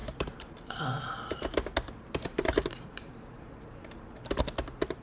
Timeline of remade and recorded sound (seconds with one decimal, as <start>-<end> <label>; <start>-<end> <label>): 0.0-0.8 remade; 0.8-2.2 recorded; 2.2-4.4 remade; 4.4-5.0 recorded